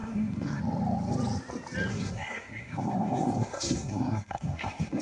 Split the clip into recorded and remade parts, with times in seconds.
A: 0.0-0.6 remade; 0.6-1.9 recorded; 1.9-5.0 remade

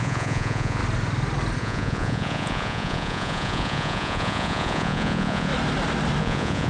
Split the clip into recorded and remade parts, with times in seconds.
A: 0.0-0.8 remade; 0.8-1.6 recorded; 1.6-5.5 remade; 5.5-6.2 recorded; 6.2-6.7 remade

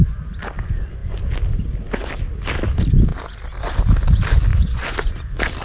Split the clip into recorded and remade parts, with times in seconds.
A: 0.0-4.5 recorded; 4.5-5.1 remade; 5.1-5.6 recorded

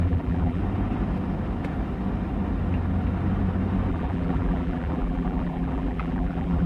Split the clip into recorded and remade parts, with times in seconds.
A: 0.0-0.6 remade; 0.6-3.9 recorded; 3.9-6.7 remade

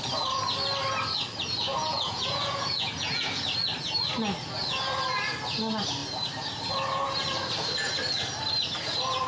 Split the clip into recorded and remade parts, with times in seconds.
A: 0.0-1.7 recorded; 1.7-3.4 remade; 3.4-9.3 recorded

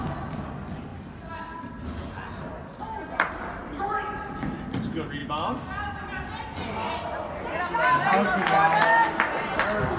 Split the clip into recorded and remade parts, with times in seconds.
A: 0.0-10.0 recorded

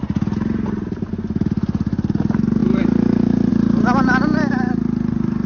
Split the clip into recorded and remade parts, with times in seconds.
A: 0.0-5.5 recorded